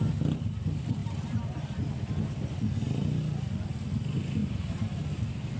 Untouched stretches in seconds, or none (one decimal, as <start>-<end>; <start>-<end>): 0.0-1.0; 1.8-4.4; 5.0-5.6